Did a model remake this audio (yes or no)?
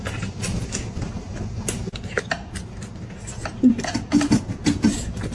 no